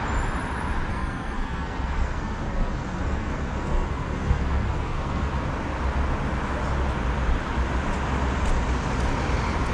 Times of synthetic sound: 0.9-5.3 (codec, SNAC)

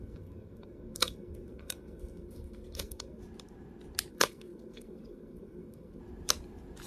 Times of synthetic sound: 0.0-3.2 (codec, SNAC); 4.1-6.0

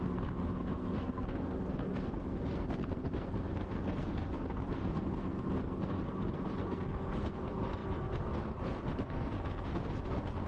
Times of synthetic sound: 0.0-10.5 (codec, SNAC)